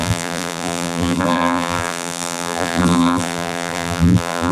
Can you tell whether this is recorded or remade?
remade